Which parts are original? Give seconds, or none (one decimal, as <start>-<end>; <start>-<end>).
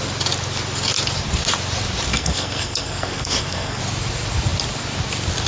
0.0-2.1; 3.8-5.5